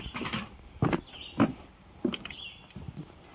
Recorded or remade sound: recorded